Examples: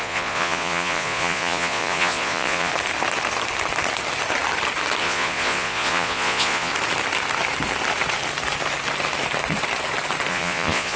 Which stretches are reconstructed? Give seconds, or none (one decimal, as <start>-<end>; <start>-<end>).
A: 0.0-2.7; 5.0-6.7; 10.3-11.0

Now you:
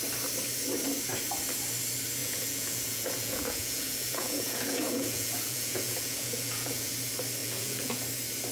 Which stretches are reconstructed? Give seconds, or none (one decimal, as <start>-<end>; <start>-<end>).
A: 2.2-6.9; 7.4-8.0

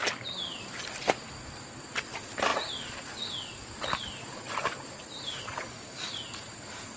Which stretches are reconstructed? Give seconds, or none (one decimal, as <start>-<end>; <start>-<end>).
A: none

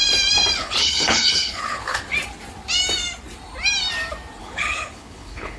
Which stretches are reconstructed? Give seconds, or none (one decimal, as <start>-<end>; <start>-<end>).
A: 0.6-2.0; 4.4-5.6